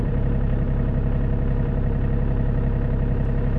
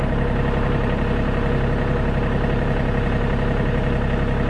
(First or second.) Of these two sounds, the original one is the second